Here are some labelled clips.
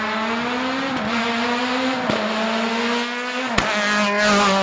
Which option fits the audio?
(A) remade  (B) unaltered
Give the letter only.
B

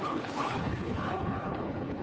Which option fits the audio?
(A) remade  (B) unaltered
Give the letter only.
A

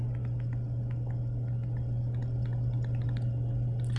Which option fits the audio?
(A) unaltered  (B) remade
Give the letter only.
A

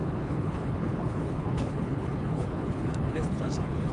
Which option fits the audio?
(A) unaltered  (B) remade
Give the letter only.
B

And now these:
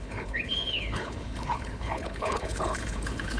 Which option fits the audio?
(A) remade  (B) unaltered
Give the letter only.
A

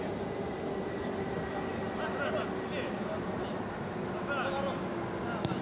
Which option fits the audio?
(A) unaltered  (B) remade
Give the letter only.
A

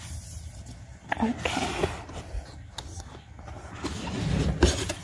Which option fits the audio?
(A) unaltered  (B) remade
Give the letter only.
A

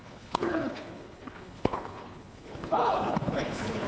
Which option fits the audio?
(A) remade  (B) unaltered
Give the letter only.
A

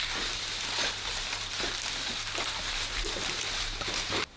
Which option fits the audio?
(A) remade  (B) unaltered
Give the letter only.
B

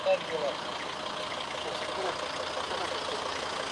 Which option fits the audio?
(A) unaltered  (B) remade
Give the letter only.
A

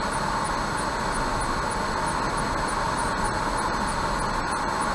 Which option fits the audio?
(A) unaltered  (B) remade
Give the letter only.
A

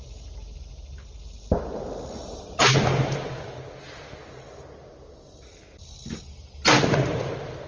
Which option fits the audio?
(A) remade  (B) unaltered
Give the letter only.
B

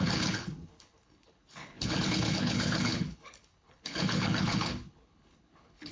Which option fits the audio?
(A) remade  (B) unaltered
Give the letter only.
A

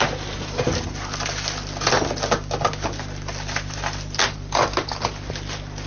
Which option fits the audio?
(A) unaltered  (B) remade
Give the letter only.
A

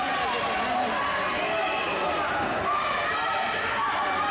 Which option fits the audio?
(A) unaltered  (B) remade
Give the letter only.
A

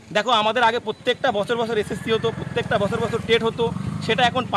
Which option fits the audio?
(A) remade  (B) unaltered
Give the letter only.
B